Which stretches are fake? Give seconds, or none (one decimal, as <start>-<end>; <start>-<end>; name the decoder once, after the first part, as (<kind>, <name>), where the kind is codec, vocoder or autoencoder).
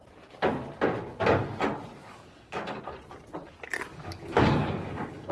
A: 2.0-2.8 (codec, DAC); 3.9-5.3